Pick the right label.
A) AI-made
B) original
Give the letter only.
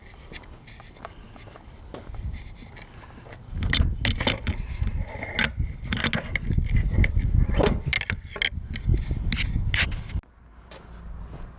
B